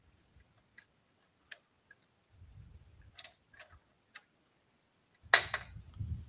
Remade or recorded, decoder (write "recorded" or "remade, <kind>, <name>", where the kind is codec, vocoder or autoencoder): recorded